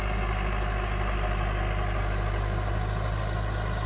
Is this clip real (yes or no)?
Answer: yes